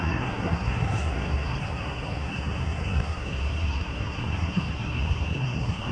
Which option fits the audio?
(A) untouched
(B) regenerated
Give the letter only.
B